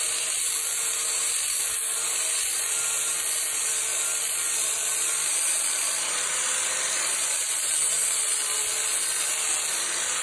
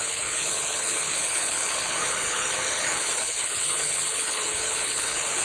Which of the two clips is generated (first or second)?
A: second